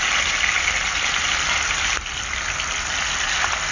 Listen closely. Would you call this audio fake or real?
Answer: real